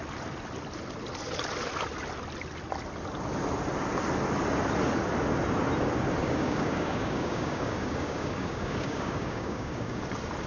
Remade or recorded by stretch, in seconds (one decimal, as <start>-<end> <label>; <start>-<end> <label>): 0.0-6.2 recorded; 6.2-10.0 remade; 10.0-10.5 recorded